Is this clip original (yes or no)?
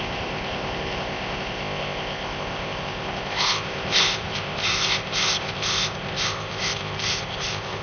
no